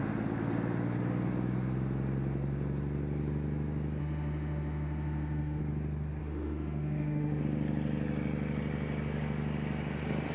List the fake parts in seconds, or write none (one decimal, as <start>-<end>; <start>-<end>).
4.0-5.6; 6.2-7.4